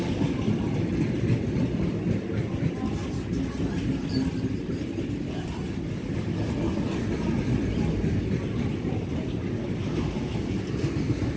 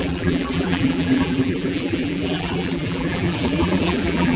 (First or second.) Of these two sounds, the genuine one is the first